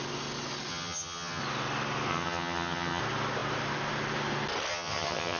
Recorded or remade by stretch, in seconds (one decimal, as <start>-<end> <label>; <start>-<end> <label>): 0.0-0.7 recorded; 0.7-1.4 remade; 1.4-2.1 recorded; 2.1-3.0 remade; 3.0-4.7 recorded; 4.7-5.4 remade